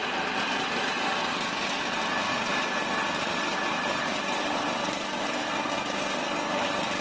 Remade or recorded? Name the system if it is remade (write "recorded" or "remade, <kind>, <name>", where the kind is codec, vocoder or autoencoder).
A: recorded